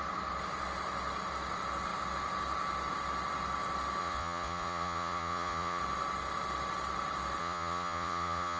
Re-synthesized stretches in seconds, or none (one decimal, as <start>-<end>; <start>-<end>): 4.0-5.8; 7.4-8.6